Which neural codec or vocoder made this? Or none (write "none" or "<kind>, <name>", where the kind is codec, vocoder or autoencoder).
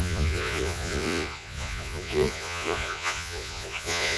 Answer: vocoder, Vocos